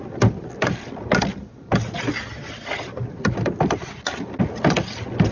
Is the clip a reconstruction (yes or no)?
no